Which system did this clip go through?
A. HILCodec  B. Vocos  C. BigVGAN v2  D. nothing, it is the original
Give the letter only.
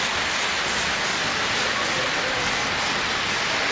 D